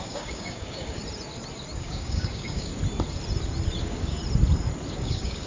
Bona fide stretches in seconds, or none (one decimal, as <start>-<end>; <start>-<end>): 1.0-1.8; 2.7-3.8; 4.2-4.9